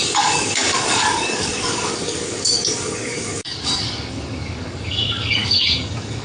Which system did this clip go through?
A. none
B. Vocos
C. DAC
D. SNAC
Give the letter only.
C